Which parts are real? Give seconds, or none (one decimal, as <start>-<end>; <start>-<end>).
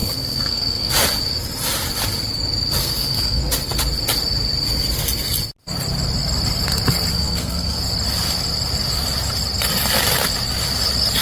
0.9-2.8; 3.4-7.1; 7.8-11.2